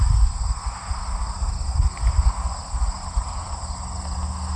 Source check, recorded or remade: recorded